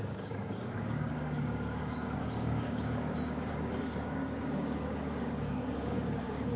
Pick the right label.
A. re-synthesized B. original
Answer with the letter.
A